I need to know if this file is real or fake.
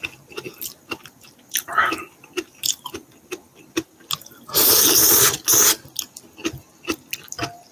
real